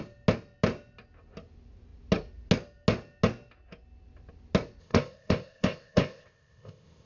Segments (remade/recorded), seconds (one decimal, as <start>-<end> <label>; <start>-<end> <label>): 0.0-4.8 recorded; 4.8-7.1 remade